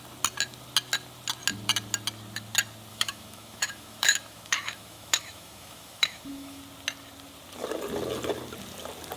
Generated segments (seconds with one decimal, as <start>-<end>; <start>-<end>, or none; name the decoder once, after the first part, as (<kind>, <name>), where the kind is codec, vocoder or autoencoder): 2.9-6.6 (autoencoder, DAC-VAE)